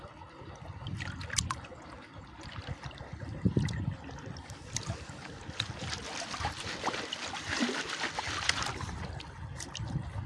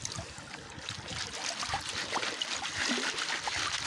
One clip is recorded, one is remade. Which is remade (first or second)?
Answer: first